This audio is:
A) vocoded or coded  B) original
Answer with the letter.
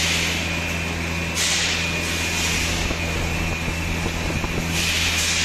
B